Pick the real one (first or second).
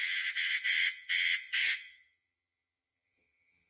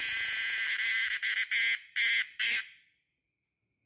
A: second